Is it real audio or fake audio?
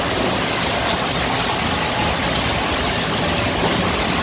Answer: real